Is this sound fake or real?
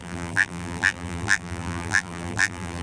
fake